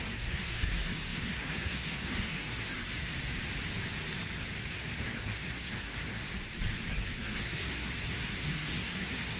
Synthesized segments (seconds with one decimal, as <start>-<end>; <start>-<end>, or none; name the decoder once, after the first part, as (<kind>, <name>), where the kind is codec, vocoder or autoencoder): 0.0-3.1 (codec, SNAC); 4.6-6.3; 6.9-9.4